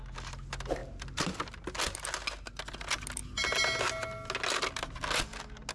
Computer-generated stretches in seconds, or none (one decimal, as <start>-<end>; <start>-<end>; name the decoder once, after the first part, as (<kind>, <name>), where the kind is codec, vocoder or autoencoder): none